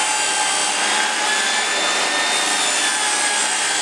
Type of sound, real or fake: real